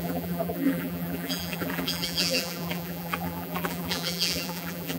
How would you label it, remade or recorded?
remade